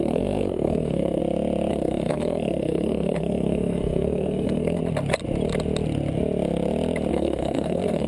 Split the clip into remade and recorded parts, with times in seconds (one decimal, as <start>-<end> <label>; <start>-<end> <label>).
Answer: 0.0-1.2 remade; 1.2-1.7 recorded; 1.7-4.8 remade; 4.8-7.1 recorded; 7.1-8.1 remade